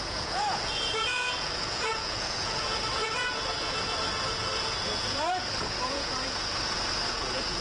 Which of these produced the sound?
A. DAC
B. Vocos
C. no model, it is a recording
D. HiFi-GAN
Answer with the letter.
B